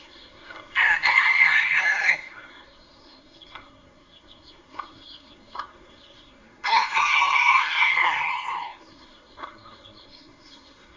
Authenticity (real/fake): fake